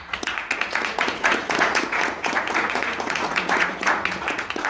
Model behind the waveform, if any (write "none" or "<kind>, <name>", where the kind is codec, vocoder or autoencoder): vocoder, Vocos